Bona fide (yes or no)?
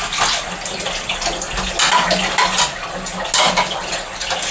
yes